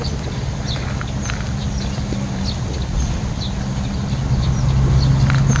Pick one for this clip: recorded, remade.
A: recorded